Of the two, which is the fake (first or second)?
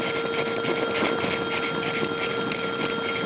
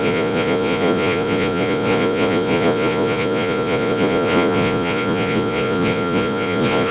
second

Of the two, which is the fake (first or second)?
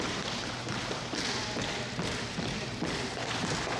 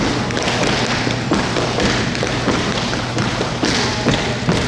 first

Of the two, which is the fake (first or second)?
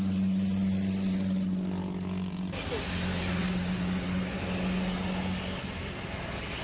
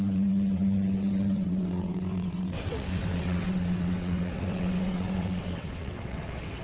second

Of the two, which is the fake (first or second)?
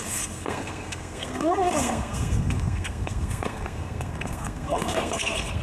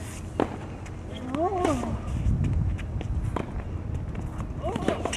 first